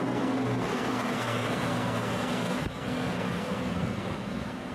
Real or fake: fake